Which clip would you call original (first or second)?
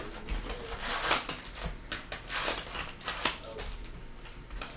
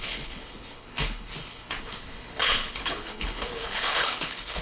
first